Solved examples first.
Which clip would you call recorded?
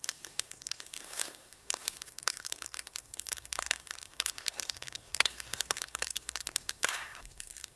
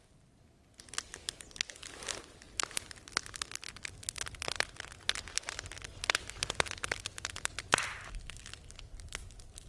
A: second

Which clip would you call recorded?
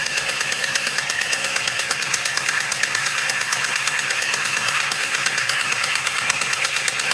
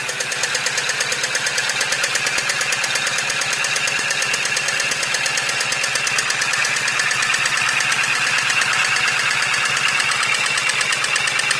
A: second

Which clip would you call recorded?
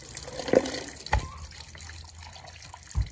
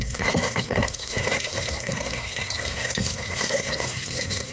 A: first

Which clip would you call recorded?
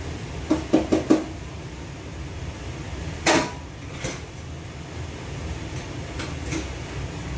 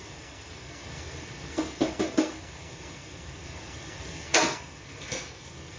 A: first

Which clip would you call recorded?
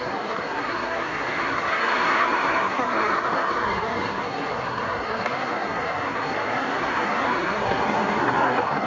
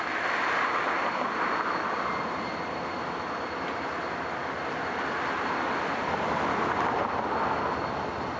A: second